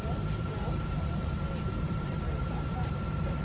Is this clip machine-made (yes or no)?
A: yes